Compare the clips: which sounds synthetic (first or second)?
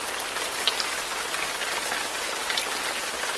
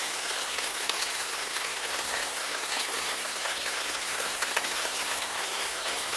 second